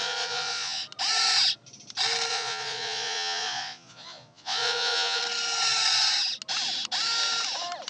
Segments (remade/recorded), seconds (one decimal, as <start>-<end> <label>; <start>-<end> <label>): 0.0-0.8 remade; 0.8-2.3 recorded; 2.3-5.2 remade; 5.2-7.9 recorded